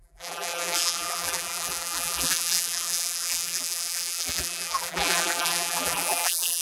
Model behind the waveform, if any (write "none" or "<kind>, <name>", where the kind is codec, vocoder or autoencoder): vocoder, BigVGAN v2